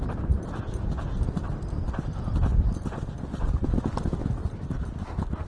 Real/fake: real